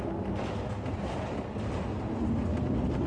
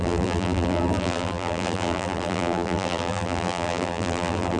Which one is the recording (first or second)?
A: first